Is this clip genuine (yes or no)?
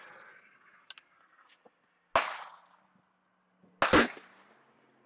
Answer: yes